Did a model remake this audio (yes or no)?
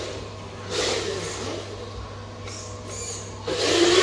no